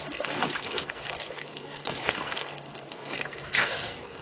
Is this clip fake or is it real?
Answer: fake